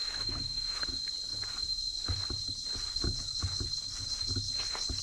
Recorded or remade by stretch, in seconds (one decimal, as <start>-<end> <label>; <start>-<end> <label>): 0.0-0.8 remade; 0.8-5.0 recorded